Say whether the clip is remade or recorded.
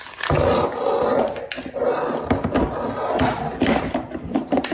recorded